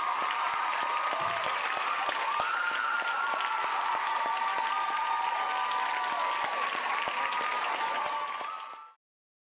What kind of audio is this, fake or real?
real